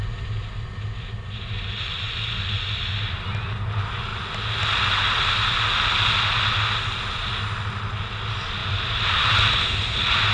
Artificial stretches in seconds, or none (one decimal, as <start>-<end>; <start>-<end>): 8.6-9.5